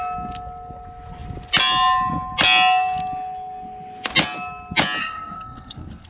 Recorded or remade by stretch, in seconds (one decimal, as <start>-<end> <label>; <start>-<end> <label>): 0.0-5.0 recorded; 5.0-6.1 remade